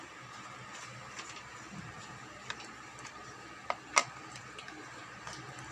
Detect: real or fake real